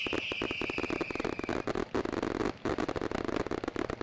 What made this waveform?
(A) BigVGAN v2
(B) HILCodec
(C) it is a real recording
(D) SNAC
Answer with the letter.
C